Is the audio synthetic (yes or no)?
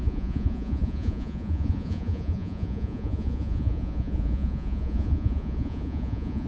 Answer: yes